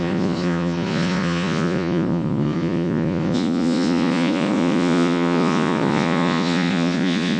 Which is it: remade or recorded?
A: remade